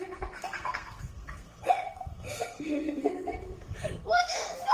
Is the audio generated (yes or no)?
yes